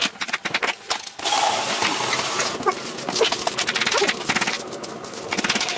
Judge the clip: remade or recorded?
recorded